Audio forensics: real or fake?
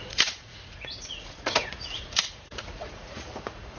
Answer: fake